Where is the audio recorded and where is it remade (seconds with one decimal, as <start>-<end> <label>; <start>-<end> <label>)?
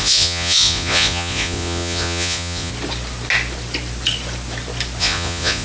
0.0-2.7 remade; 2.7-5.0 recorded; 5.0-5.6 remade